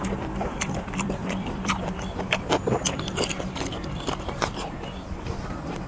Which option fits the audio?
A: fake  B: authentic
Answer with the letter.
A